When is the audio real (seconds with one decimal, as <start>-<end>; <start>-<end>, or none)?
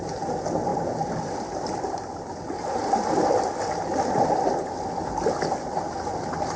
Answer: 0.0-6.6